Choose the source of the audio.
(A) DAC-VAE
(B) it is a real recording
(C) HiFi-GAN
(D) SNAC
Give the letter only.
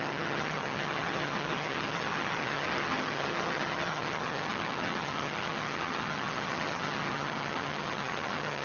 C